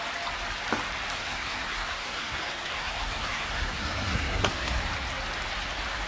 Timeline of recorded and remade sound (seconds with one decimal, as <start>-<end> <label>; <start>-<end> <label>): 0.0-1.1 recorded; 1.1-4.8 remade; 4.8-6.1 recorded